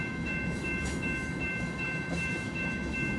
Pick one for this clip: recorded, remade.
remade